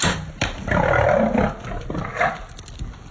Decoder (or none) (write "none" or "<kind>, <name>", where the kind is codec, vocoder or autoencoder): none